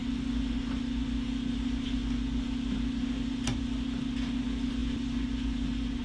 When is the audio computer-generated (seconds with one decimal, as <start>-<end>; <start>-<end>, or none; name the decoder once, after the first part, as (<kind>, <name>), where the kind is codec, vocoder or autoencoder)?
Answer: none